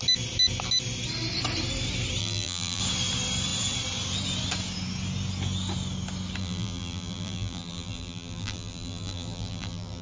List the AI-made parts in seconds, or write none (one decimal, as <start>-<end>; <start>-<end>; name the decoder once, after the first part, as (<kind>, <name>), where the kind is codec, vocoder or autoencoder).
2.2-2.8 (vocoder, BigVGAN v2); 6.4-10.0